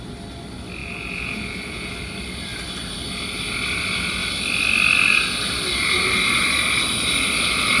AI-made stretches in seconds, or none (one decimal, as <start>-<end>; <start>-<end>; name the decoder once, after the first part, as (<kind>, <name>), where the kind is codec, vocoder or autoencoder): 0.8-1.9 (vocoder, Vocos)